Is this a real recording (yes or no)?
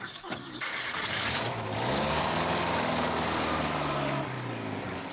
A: no